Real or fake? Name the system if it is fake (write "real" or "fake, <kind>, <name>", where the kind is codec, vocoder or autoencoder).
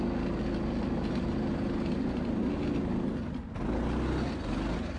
real